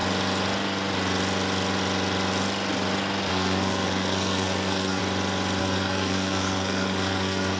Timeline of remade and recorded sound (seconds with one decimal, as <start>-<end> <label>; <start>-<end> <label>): 0.0-3.3 recorded; 3.3-5.0 remade; 5.0-5.6 recorded; 5.6-7.6 remade